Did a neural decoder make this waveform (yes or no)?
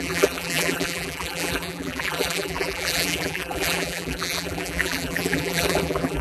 yes